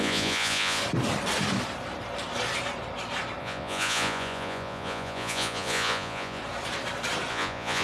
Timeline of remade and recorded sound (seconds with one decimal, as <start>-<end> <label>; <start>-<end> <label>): 0.0-0.8 remade; 0.8-3.4 recorded; 3.4-6.4 remade; 6.4-7.3 recorded; 7.3-7.8 remade

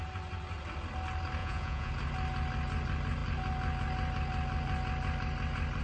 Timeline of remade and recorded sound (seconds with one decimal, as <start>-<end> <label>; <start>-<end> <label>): 0.0-1.4 recorded; 1.4-1.9 remade; 1.9-5.8 recorded

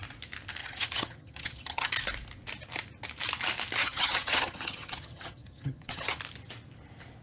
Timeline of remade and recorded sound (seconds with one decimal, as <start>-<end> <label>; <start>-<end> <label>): 0.0-0.6 recorded; 0.6-1.9 remade; 1.9-3.8 recorded; 3.8-6.2 remade; 6.2-7.2 recorded

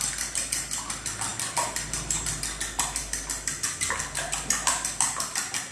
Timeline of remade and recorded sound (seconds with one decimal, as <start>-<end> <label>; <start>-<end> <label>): 0.0-5.7 remade

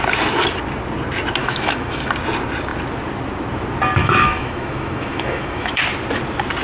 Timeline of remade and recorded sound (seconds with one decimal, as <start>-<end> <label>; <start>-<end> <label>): 0.0-1.4 recorded; 1.4-2.1 remade; 2.1-4.0 recorded; 4.0-5.8 remade; 5.8-6.6 recorded

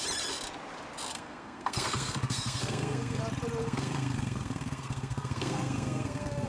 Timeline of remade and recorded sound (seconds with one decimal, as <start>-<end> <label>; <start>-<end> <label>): 0.0-1.1 recorded; 1.1-3.2 remade; 3.2-3.6 recorded; 3.6-6.5 remade

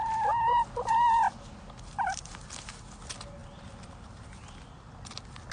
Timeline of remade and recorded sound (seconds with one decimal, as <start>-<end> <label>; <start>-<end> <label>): 0.0-3.4 recorded; 3.4-4.4 remade; 4.4-5.5 recorded